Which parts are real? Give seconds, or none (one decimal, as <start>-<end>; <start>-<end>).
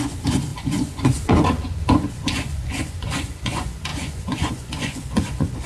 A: none